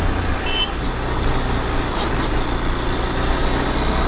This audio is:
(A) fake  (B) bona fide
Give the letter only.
B